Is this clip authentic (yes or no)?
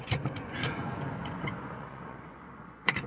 no